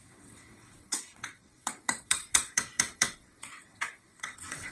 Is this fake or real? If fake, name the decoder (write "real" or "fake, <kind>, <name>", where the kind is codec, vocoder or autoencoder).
fake, vocoder, WaveNeXt